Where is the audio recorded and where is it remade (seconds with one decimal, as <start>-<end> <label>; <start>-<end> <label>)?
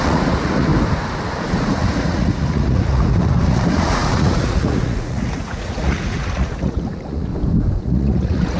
0.0-0.7 remade; 0.7-1.5 recorded; 1.5-7.3 remade; 7.3-7.8 recorded; 7.8-8.6 remade